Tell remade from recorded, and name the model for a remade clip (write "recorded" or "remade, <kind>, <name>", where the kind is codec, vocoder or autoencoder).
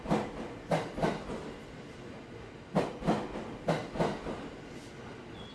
recorded